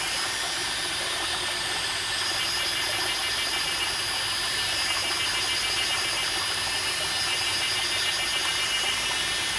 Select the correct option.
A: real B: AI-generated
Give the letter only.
A